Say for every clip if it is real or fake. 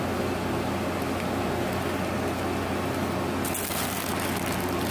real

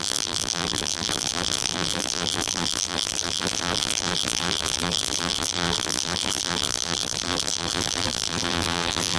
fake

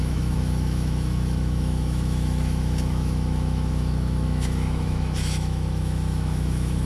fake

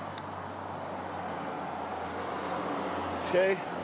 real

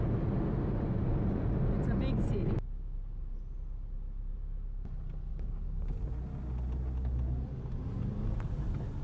real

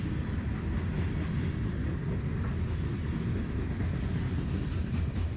real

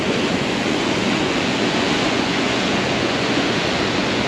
fake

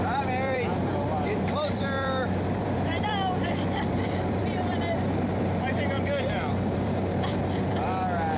fake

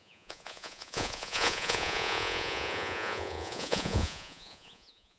fake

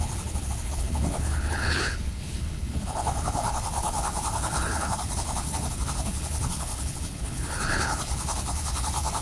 fake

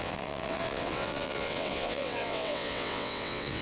fake